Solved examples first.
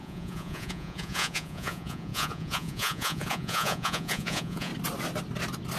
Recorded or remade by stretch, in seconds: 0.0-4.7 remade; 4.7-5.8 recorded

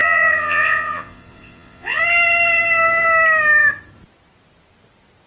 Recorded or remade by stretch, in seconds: 0.0-2.0 remade; 2.0-5.3 recorded

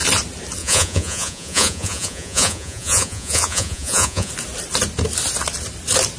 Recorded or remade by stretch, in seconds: 0.0-0.6 recorded; 0.6-4.3 remade; 4.3-6.2 recorded

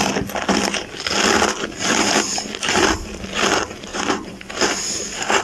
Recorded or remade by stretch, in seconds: 0.0-3.9 recorded; 3.9-4.4 remade; 4.4-5.4 recorded

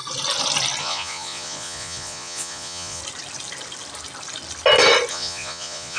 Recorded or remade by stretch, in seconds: 0.0-0.8 recorded; 0.8-3.0 remade; 3.0-5.1 recorded; 5.1-6.0 remade

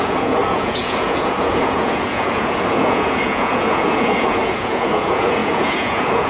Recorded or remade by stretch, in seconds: 0.0-6.3 remade